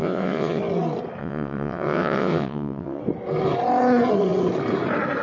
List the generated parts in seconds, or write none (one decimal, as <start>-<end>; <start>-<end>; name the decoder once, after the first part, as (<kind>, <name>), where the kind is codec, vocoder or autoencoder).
0.0-0.6 (vocoder, WaveNeXt); 1.2-3.0